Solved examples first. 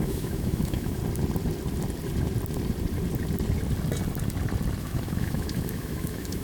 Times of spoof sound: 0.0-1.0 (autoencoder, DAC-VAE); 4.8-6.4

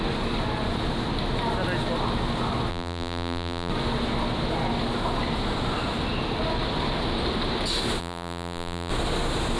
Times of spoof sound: 2.7-3.7 (vocoder, BigVGAN v2); 8.0-8.9

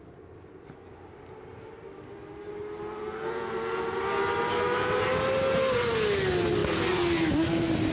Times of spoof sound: none